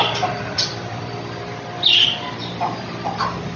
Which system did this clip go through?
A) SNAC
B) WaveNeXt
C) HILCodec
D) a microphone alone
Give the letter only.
D